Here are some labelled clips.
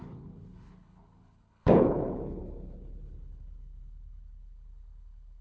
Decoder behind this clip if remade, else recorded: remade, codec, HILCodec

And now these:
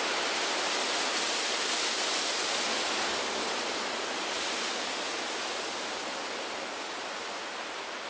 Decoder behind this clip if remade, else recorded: recorded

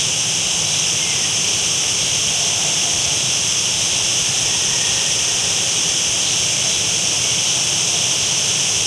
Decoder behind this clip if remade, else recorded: recorded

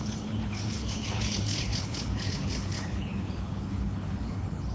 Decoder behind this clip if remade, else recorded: remade, codec, HILCodec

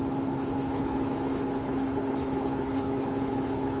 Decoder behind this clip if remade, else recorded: remade, codec, HILCodec